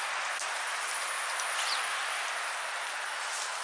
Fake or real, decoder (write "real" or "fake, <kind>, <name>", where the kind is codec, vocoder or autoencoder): real